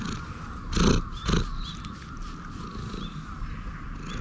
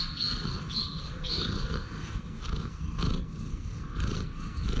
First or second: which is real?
first